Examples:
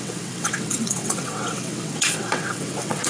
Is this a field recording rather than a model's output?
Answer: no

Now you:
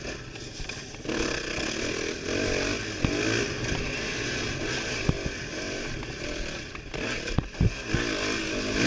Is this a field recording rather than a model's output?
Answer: yes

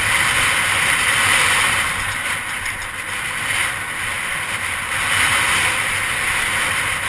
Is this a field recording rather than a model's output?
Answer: yes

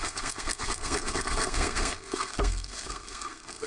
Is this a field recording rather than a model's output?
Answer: no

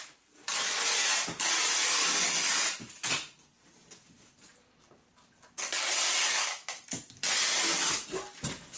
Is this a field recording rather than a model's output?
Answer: yes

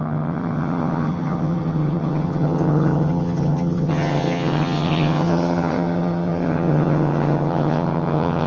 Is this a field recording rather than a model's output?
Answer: no